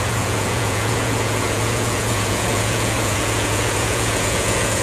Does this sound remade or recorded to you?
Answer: remade